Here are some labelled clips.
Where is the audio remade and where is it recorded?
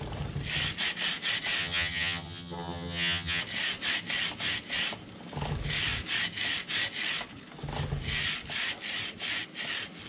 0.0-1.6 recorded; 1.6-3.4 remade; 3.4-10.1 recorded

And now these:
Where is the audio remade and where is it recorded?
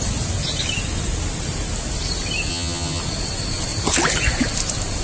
0.0-2.5 recorded; 2.5-3.0 remade; 3.0-5.0 recorded